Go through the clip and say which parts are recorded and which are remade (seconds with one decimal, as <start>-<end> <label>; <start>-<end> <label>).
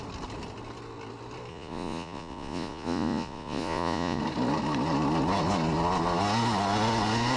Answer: 0.0-1.5 recorded; 1.5-4.2 remade; 4.2-7.4 recorded